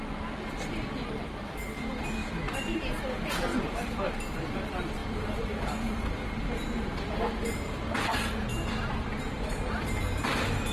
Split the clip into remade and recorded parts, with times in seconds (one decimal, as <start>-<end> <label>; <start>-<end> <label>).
0.0-2.2 recorded; 2.2-2.8 remade; 2.8-3.5 recorded; 3.5-4.1 remade; 4.1-5.0 recorded; 5.0-8.0 remade; 8.0-8.5 recorded; 8.5-9.5 remade; 9.5-10.7 recorded